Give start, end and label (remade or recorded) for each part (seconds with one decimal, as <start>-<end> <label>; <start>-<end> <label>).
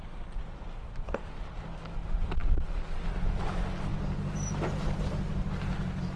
0.0-6.2 recorded